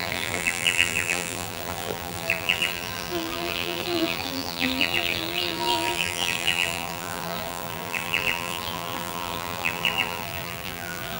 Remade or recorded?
remade